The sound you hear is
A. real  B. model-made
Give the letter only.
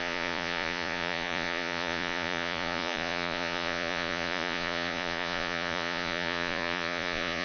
B